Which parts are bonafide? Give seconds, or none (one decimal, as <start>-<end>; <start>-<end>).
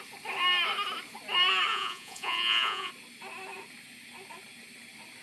0.0-1.7; 2.9-5.2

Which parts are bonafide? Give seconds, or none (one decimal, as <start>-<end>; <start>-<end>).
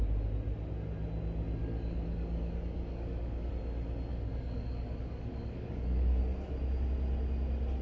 0.0-1.6; 3.5-4.1; 6.2-7.8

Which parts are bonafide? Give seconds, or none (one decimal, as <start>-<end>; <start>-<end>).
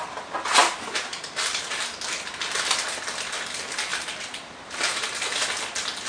0.0-0.6; 1.8-6.1